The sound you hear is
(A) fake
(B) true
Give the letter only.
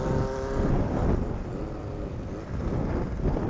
B